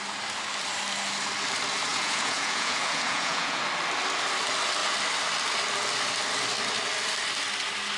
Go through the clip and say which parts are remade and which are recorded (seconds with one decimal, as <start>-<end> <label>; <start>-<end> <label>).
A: 0.0-1.9 recorded; 1.9-3.6 remade; 3.6-8.0 recorded